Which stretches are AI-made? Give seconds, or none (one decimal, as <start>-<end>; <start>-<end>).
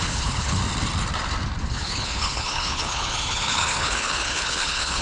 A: 0.0-0.6; 1.6-5.0